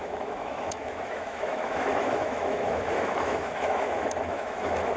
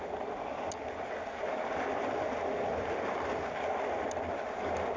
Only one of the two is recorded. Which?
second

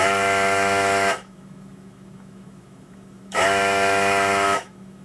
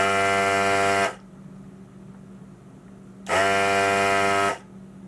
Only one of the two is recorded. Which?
second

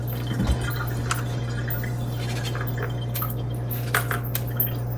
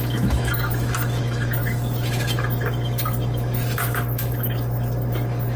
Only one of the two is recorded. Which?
first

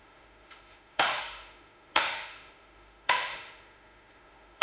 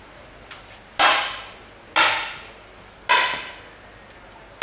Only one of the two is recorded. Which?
second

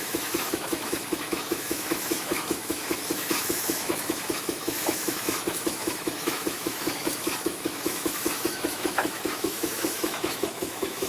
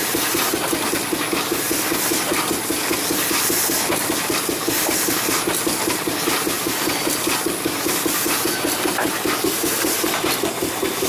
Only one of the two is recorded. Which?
second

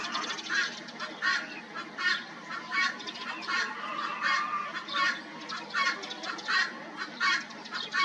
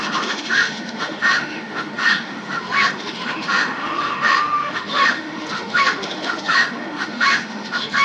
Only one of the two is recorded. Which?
first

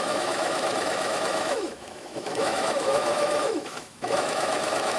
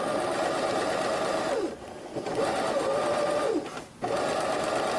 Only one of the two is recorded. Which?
second